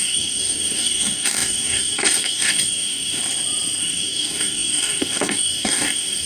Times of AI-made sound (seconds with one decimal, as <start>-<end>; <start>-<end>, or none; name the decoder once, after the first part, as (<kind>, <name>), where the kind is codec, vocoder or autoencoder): 0.0-3.2 (codec, DAC); 3.8-6.3